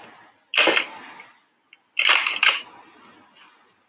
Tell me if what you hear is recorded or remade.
recorded